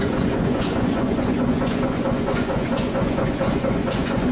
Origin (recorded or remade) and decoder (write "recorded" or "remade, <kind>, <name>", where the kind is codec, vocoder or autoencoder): remade, vocoder, Vocos